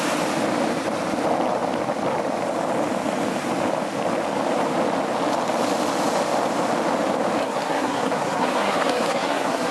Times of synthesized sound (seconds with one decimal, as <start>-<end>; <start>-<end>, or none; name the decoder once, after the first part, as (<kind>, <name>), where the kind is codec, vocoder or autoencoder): 7.4-9.7 (codec, SNAC)

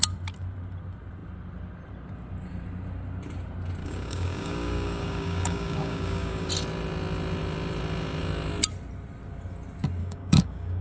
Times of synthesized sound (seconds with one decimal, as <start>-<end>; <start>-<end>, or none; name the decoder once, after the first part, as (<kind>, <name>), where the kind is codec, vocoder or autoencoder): 3.8-6.5 (codec, DAC); 10.0-10.8

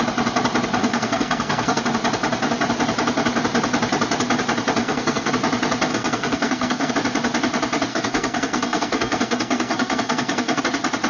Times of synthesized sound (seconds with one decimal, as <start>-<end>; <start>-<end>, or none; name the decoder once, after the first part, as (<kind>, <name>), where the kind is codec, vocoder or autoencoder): 0.8-1.8 (codec, SNAC); 4.8-5.3; 5.9-6.9; 7.9-10.6